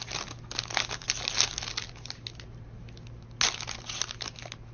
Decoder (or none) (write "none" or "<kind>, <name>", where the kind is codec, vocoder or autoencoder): none